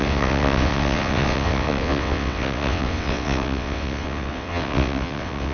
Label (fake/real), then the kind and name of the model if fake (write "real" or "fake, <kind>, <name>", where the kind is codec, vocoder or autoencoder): fake, vocoder, WaveNeXt